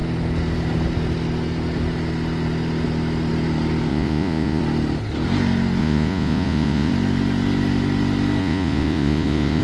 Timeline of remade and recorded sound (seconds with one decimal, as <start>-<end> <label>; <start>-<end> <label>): 0.0-3.9 recorded; 3.9-4.6 remade; 4.6-5.8 recorded; 5.8-6.9 remade; 6.9-8.4 recorded; 8.4-9.6 remade